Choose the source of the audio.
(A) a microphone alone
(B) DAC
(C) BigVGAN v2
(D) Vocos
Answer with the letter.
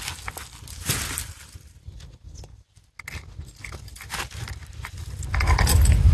A